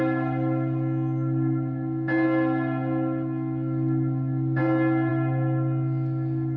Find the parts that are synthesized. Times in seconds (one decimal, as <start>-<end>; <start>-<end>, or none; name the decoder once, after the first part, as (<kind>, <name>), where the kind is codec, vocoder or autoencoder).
none